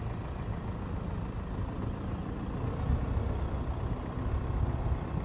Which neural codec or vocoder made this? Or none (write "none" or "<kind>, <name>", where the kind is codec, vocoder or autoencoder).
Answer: none